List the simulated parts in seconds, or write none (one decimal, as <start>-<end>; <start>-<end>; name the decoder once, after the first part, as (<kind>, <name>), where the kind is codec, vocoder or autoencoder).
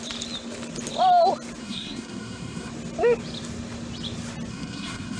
1.6-2.7 (codec, SNAC); 4.5-5.2